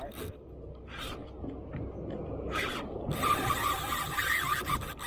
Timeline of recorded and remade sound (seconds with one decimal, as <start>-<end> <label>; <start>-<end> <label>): 0.0-1.2 recorded; 1.2-4.3 remade; 4.3-5.1 recorded